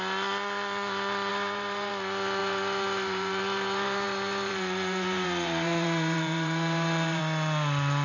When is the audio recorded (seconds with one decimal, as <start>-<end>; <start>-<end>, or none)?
0.0-1.3; 1.9-2.4; 7.2-8.0